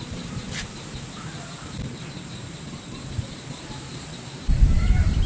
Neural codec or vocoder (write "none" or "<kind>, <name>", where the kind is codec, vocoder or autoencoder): vocoder, BigVGAN v2